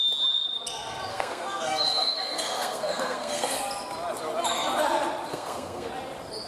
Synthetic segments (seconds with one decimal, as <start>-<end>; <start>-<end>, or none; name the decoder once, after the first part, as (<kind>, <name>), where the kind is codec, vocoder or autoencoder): 1.1-3.6 (codec, SNAC); 5.3-5.9